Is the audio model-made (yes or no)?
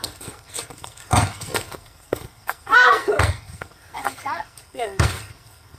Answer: yes